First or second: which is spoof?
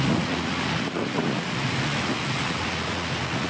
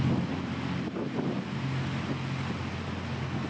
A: first